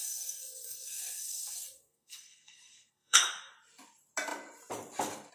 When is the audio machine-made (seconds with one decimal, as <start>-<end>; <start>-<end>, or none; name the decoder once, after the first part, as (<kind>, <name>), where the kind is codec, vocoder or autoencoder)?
0.0-3.2 (codec, SNAC)